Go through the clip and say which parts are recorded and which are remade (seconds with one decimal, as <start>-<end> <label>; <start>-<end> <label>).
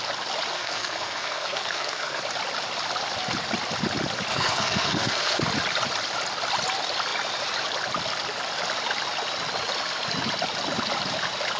0.0-0.5 recorded; 0.5-2.2 remade; 2.2-4.3 recorded; 4.3-5.4 remade; 5.4-11.6 recorded